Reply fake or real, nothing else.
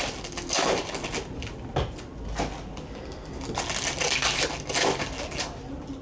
real